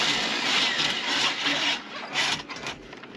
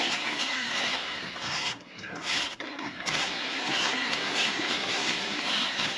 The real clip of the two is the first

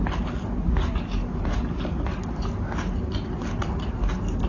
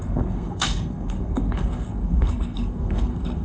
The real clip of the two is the first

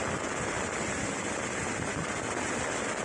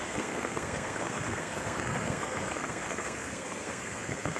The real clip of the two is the first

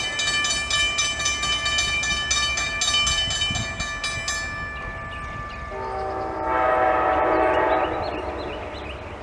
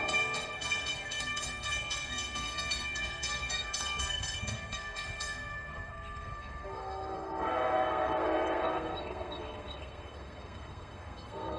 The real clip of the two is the first